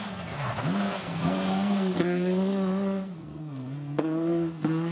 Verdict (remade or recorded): remade